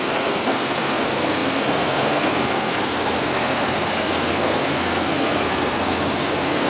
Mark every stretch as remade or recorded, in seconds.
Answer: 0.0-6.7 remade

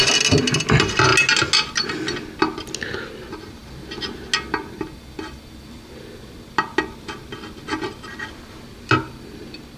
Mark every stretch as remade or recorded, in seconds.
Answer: 0.0-9.8 recorded

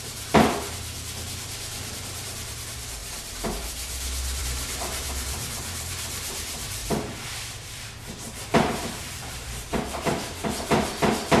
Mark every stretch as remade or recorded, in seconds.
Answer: 0.0-3.0 remade; 3.0-4.4 recorded; 4.4-6.8 remade; 6.8-7.6 recorded; 7.6-11.4 remade

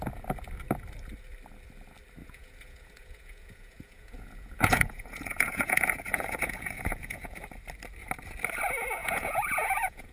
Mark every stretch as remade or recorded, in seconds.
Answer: 0.0-2.2 recorded; 2.2-7.4 remade; 7.4-9.0 recorded; 9.0-10.1 remade

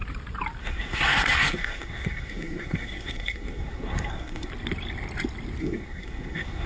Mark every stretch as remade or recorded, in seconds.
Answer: 0.0-0.6 recorded; 0.6-4.5 remade; 4.5-5.6 recorded; 5.6-6.7 remade